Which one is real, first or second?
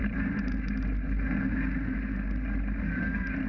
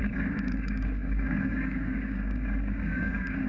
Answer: first